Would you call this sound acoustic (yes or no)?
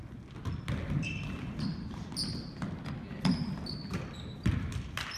yes